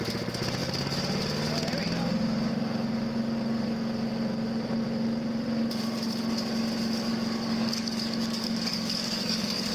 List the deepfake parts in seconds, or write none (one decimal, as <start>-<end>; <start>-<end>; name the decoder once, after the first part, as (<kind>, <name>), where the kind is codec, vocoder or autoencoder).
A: 7.1-9.7 (codec, DAC)